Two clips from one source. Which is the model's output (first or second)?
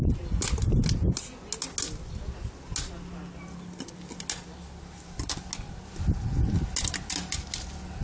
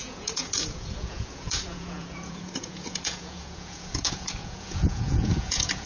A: second